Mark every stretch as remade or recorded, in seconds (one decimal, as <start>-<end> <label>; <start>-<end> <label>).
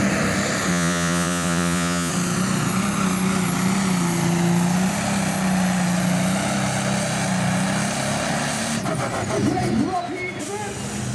0.0-0.7 recorded; 0.7-2.1 remade; 2.1-11.1 recorded